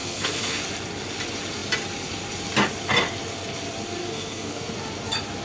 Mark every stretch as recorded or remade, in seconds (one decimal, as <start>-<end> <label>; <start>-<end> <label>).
0.0-0.6 remade; 0.6-4.0 recorded; 4.0-4.7 remade; 4.7-5.4 recorded